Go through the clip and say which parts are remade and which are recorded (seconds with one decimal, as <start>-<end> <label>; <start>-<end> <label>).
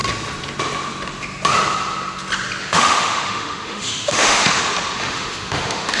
0.0-2.6 recorded; 2.6-4.6 remade; 4.6-5.0 recorded; 5.0-6.0 remade